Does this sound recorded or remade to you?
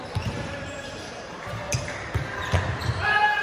remade